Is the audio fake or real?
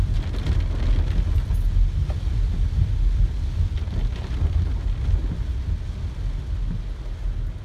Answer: real